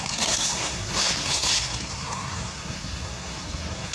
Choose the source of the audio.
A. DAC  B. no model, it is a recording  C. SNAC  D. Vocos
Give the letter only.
C